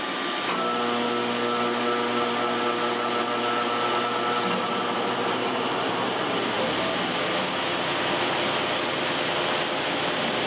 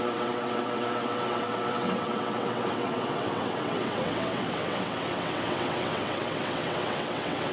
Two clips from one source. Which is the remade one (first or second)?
second